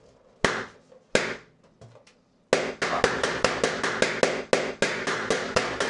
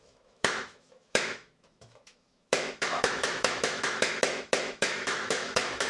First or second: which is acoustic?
first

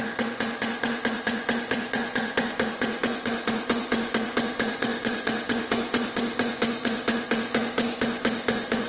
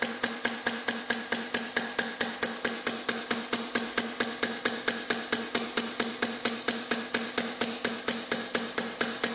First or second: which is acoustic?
second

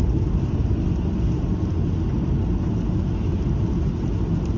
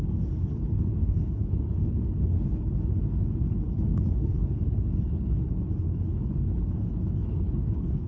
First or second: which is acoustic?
first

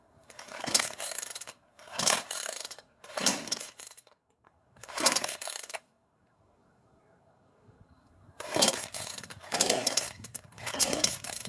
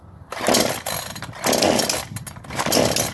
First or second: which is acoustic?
second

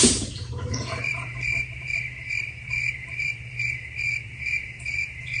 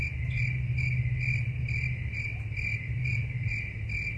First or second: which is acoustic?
second